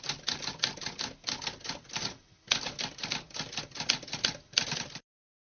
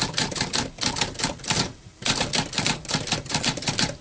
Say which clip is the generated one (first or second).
second